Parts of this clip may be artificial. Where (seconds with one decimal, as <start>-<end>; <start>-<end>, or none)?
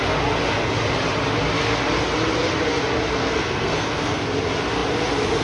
3.2-4.2